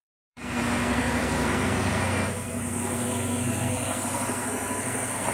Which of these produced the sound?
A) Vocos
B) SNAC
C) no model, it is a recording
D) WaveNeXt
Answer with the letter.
B